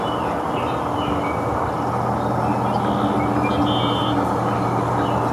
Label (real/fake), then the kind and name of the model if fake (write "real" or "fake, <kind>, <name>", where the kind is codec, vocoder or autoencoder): real